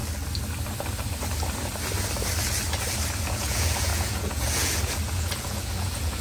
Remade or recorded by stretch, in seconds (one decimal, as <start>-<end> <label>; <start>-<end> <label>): 0.0-3.2 recorded; 3.2-6.2 remade

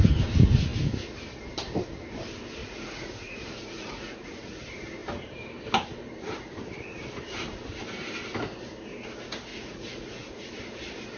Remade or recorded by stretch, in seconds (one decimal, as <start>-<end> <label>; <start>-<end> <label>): 0.0-2.6 recorded; 2.6-4.6 remade; 4.6-9.5 recorded; 9.5-10.5 remade; 10.5-11.2 recorded

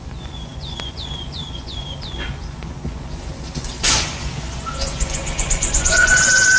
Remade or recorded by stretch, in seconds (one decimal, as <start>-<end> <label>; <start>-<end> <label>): 0.0-6.6 remade